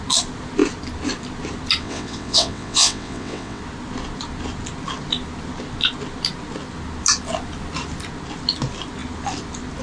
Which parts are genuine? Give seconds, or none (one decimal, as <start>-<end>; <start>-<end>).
0.0-1.8; 3.6-9.8